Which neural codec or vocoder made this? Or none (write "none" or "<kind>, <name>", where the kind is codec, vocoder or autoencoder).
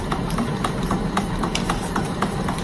vocoder, BigVGAN v2